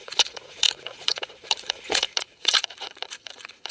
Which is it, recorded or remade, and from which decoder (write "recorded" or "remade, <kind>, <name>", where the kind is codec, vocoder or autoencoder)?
remade, vocoder, Vocos